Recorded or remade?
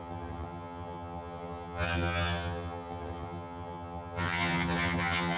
remade